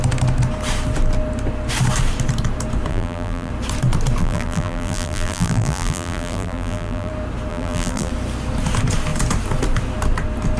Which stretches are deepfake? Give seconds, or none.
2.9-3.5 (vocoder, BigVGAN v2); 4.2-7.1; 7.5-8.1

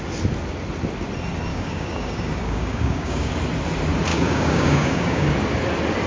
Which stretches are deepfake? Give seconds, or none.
1.5-3.3 (codec, DAC); 4.1-5.3